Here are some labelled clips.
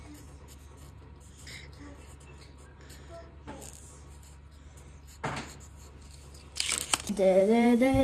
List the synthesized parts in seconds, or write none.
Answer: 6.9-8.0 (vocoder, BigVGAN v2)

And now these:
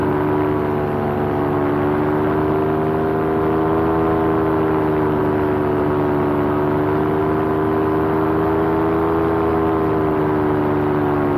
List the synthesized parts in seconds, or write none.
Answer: none

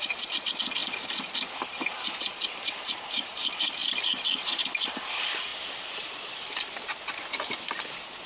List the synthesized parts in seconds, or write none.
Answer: 0.0-0.8 (vocoder, BigVGAN v2); 2.2-3.8; 4.9-8.3

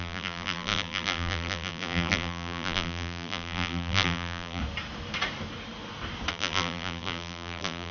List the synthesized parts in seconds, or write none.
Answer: 0.0-4.6 (vocoder, BigVGAN v2); 6.3-7.9

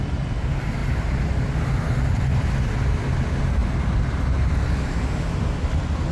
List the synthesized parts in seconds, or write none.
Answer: none

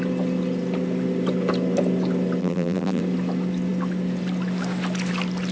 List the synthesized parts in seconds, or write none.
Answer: 2.4-3.0 (vocoder, BigVGAN v2)

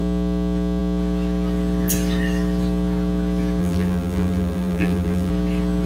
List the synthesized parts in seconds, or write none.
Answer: 3.6-5.3 (vocoder, BigVGAN v2)

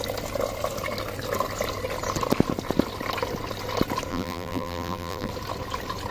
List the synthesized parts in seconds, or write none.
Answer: 4.1-5.3 (vocoder, BigVGAN v2)